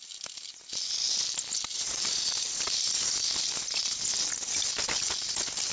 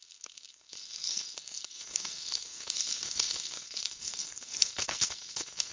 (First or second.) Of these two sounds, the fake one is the second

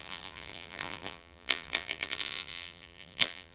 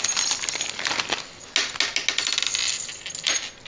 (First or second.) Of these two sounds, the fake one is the first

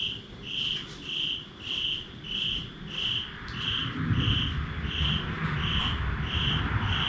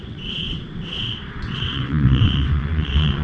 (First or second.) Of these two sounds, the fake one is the second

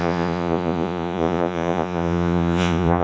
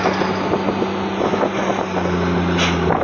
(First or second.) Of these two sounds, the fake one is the first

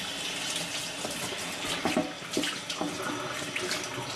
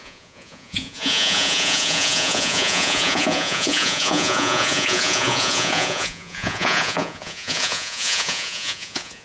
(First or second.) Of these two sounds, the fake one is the second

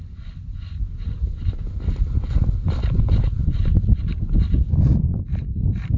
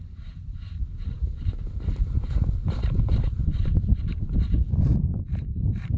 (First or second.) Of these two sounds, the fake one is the second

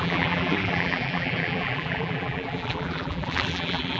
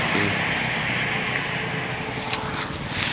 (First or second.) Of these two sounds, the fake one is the first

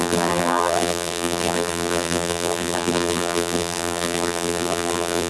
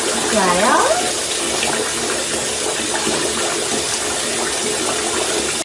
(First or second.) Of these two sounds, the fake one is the first